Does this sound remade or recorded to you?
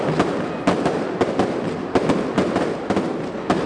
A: recorded